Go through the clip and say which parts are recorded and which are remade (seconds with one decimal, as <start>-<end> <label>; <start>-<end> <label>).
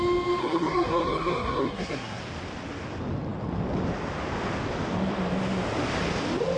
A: 0.0-0.4 recorded; 0.4-2.2 remade; 2.2-6.6 recorded